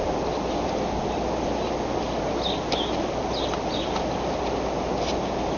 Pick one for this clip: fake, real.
real